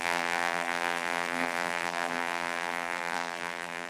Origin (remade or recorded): remade